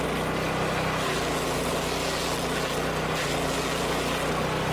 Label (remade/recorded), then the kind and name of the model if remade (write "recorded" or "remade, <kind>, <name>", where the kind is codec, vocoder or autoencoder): recorded